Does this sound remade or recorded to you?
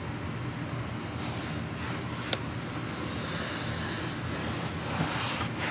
recorded